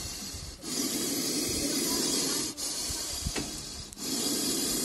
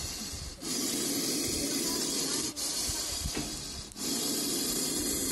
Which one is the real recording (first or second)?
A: second